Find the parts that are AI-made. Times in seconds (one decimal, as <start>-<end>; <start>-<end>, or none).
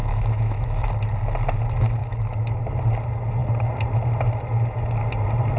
0.0-0.9; 2.0-2.6